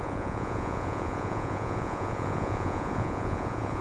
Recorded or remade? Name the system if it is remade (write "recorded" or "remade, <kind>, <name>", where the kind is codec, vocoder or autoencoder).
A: remade, vocoder, Vocos